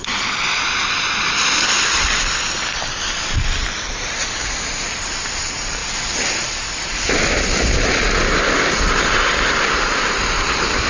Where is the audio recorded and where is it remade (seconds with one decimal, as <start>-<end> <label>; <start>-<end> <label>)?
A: 0.0-3.7 recorded; 3.7-5.8 remade; 5.8-10.9 recorded